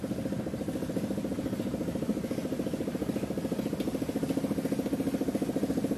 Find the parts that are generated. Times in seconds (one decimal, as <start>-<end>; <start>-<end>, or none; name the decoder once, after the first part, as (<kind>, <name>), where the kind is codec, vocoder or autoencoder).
none